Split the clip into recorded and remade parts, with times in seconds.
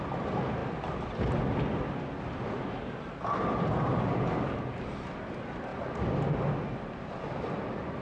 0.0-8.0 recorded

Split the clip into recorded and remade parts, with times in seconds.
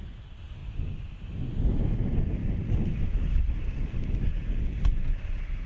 0.0-2.4 recorded; 2.4-3.7 remade; 3.7-5.7 recorded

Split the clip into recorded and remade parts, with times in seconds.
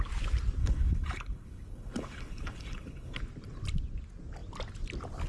0.0-0.6 recorded; 0.6-3.2 remade; 3.2-5.3 recorded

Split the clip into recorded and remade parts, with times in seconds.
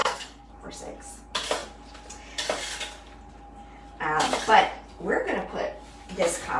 0.0-0.5 remade; 0.5-6.6 recorded